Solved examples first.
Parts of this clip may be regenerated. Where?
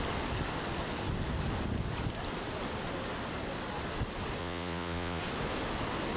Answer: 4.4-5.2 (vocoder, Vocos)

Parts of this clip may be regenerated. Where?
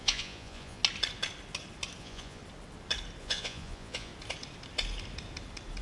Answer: 0.0-0.8 (vocoder, Vocos); 2.0-2.4; 3.2-4.1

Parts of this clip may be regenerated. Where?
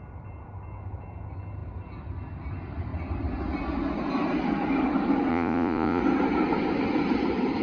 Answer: 5.3-6.0 (vocoder, Vocos)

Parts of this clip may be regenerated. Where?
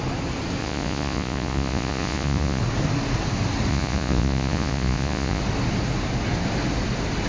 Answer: 0.6-2.6 (vocoder, Vocos); 3.7-5.4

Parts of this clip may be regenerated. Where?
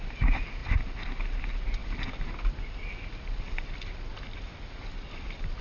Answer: none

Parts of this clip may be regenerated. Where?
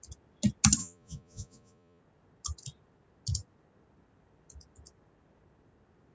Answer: 0.8-2.0 (vocoder, Vocos)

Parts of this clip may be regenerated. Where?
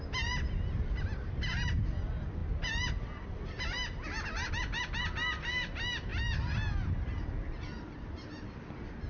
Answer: none